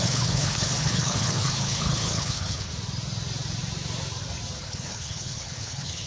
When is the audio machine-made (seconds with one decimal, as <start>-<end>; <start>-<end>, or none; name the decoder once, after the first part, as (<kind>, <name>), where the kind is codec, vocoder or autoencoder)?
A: 0.0-2.7 (codec, HILCodec); 4.6-6.1

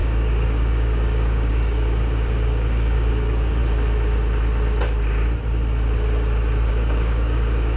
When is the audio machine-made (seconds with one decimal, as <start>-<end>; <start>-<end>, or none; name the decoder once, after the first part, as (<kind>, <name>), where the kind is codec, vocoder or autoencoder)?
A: 0.0-3.6 (codec, DAC); 6.7-7.8

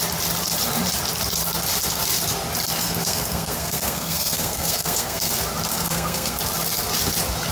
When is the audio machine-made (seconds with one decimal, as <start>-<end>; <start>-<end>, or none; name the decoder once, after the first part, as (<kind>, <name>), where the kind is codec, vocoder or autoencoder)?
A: 2.8-5.3 (codec, SNAC); 5.7-6.4

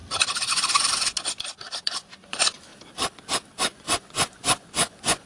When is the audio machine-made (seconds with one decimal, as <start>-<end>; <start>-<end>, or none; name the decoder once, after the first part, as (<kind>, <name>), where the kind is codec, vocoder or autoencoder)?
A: 0.5-1.1 (vocoder, Vocos); 1.8-2.7; 3.6-5.3

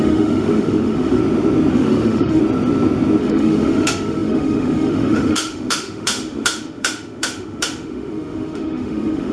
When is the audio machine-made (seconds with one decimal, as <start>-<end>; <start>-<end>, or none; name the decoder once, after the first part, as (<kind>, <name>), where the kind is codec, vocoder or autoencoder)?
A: 0.0-1.2 (autoencoder, DAC-VAE); 1.7-2.4; 3.2-9.3

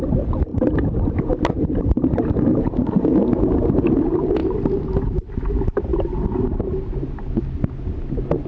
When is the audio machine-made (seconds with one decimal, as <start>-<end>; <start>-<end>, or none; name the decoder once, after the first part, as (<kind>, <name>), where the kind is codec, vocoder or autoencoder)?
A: none

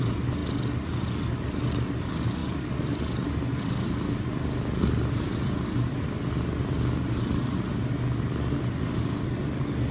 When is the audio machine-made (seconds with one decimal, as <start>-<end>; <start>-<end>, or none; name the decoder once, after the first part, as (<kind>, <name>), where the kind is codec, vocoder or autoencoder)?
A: 2.4-3.0 (vocoder, BigVGAN v2)